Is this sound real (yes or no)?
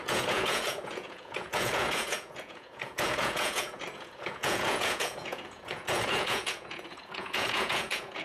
no